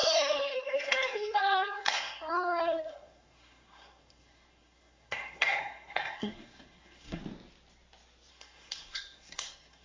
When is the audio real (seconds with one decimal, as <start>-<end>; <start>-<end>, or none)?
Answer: 7.2-8.3